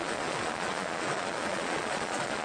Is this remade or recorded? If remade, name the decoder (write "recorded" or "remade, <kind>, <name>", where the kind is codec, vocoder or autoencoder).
remade, vocoder, Vocos